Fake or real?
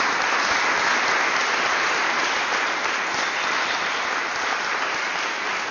real